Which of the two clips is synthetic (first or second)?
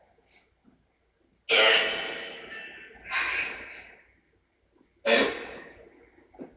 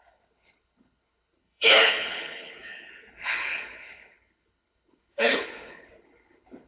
second